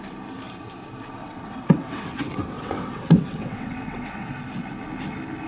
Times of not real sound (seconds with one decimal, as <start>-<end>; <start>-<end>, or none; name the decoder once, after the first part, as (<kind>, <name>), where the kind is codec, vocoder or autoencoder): 1.2-4.3 (vocoder, WaveNeXt)